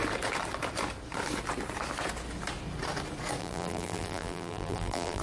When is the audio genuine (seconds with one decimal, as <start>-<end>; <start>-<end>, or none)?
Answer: 0.0-3.4